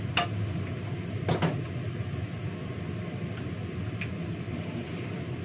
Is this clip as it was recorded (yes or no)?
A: yes